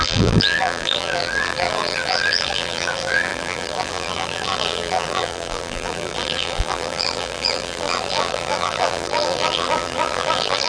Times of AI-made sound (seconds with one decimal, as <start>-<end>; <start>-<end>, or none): 0.0-10.7